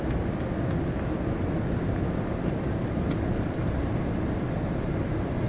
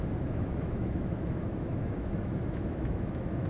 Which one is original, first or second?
first